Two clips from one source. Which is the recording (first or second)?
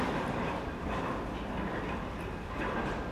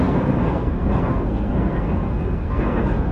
first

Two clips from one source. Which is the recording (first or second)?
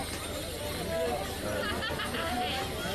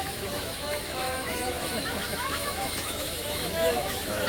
first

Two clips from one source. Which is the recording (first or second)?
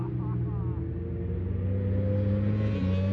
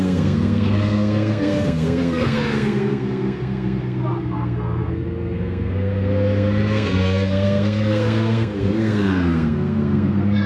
first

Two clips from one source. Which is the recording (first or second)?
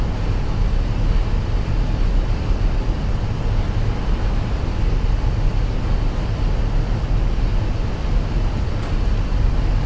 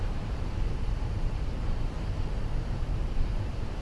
first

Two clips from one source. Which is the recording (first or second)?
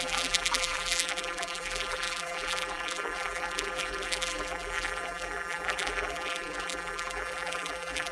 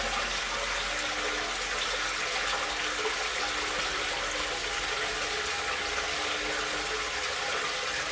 second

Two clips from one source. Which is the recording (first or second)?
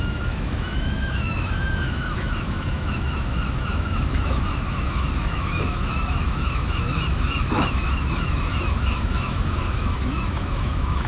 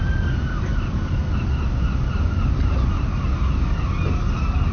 second